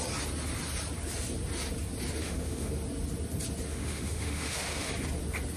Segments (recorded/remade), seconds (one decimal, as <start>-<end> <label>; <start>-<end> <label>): 0.0-2.2 recorded; 2.2-2.7 remade; 2.7-3.7 recorded; 3.7-4.9 remade; 4.9-5.6 recorded